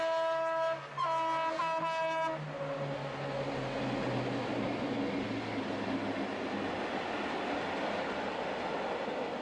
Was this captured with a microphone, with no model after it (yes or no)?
yes